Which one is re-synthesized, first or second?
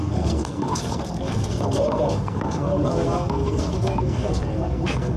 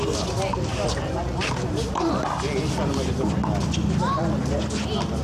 first